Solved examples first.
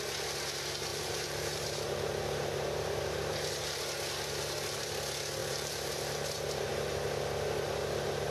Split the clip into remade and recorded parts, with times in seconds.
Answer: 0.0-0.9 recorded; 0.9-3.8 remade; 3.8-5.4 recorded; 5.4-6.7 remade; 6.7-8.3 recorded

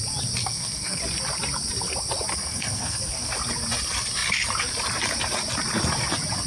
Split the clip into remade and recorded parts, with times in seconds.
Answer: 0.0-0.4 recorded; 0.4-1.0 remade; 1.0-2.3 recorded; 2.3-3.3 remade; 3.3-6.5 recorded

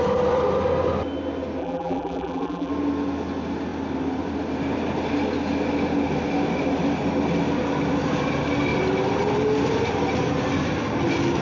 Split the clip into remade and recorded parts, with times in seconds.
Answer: 0.0-1.6 recorded; 1.6-2.7 remade; 2.7-11.4 recorded

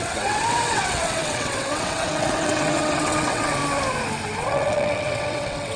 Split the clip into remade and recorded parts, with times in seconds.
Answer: 0.0-3.6 remade; 3.6-4.4 recorded; 4.4-5.8 remade